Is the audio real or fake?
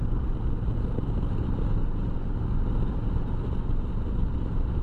real